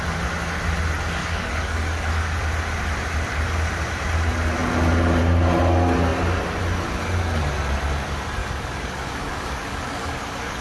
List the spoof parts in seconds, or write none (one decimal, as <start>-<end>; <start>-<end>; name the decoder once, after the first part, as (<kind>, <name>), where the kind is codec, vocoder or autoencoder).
1.2-2.4 (codec, DAC); 8.4-10.6